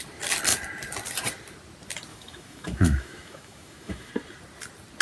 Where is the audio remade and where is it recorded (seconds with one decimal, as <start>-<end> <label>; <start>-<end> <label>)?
0.0-2.1 recorded; 2.1-4.1 remade; 4.1-5.0 recorded